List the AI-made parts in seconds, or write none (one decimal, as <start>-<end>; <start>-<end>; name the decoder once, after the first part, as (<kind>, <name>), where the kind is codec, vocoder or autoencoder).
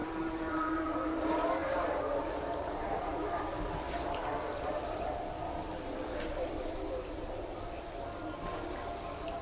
0.0-0.6 (vocoder, BigVGAN v2); 1.6-3.7; 6.3-7.3